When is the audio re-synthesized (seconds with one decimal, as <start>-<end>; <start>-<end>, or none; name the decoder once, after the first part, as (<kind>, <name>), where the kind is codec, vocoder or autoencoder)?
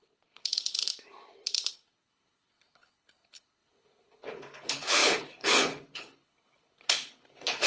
0.0-0.9 (codec, HILCodec); 1.7-7.7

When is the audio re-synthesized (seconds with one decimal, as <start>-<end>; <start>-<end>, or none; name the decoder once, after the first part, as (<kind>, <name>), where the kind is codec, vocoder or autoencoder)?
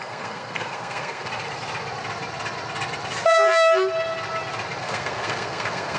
0.0-1.3 (codec, SNAC); 4.8-6.0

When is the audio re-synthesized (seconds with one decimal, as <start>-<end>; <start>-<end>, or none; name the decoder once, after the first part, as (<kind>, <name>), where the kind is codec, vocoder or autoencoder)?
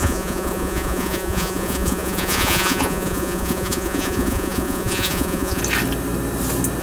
0.0-5.6 (vocoder, Vocos)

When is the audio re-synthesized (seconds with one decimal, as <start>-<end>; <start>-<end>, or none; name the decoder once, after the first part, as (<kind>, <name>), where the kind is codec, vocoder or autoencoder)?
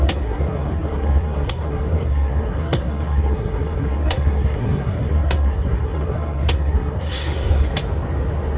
0.0-7.7 (codec, SNAC)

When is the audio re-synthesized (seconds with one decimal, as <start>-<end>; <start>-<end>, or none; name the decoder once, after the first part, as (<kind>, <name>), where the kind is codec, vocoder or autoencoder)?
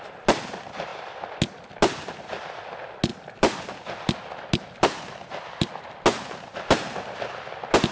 none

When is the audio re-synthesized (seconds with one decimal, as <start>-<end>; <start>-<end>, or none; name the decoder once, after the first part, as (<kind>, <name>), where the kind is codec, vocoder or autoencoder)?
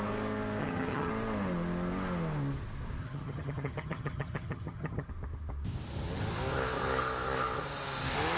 0.6-1.1 (vocoder, HiFi-GAN); 3.0-5.1